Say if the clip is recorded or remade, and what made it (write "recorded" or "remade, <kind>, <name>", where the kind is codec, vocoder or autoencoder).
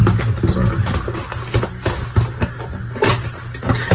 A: recorded